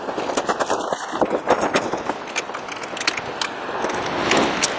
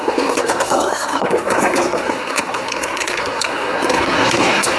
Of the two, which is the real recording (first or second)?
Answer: first